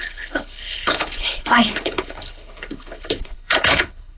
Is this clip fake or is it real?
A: fake